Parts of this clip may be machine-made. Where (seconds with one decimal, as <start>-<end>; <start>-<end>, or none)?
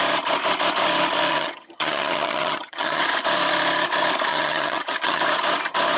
1.3-3.0; 4.3-5.2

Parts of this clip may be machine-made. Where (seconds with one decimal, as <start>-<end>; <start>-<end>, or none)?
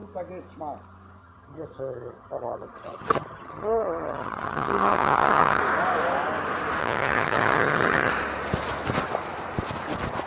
1.2-5.6; 6.8-8.1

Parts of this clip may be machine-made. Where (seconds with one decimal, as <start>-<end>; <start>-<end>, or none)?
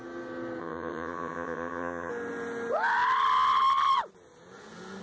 0.6-2.1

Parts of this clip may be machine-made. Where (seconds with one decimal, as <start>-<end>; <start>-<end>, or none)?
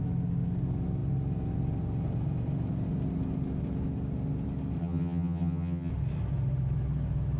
4.8-5.9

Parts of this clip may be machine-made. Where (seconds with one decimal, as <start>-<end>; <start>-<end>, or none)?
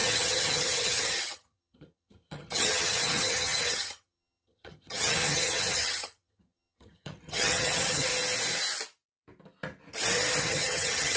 0.0-8.1; 10.4-11.2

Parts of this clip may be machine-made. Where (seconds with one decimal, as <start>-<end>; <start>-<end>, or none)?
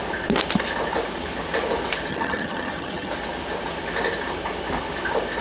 2.1-3.1